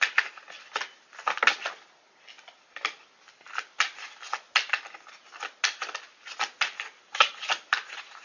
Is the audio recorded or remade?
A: recorded